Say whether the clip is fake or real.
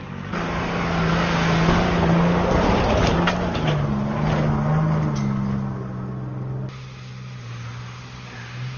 real